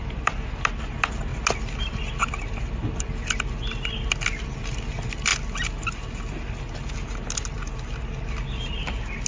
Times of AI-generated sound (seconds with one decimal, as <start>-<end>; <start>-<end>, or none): none